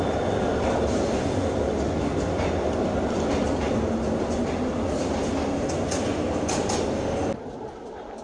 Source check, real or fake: real